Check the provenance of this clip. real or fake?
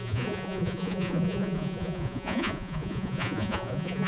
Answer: fake